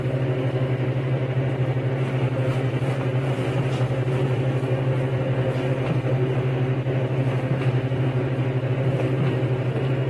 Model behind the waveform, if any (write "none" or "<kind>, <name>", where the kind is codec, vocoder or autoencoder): none